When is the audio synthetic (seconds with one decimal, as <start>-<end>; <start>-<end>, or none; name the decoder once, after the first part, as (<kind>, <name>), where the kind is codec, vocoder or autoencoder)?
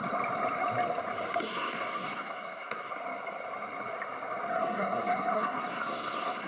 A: 1.5-2.9 (codec, SNAC); 4.5-6.5